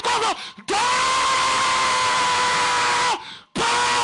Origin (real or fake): real